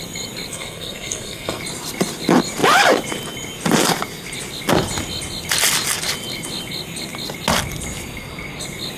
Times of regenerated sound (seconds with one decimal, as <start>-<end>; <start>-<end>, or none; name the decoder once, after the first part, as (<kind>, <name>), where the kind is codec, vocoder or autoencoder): 0.5-1.6 (codec, SNAC)